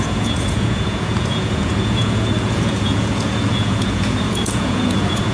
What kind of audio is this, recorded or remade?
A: remade